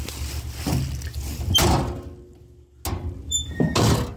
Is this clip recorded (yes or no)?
yes